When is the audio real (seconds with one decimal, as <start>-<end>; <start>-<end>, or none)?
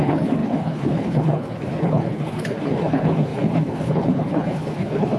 none